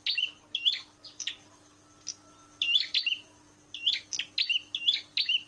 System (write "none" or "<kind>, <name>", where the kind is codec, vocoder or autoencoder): none